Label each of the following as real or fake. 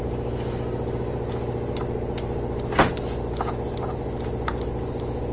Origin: real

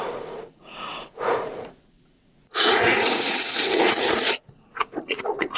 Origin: fake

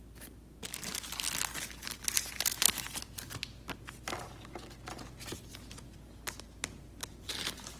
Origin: real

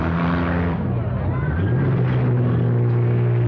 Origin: real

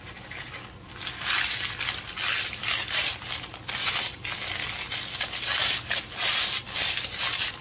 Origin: real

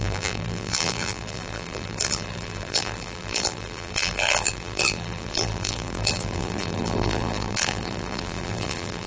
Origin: fake